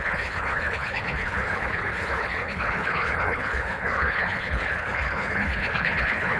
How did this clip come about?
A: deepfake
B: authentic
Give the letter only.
A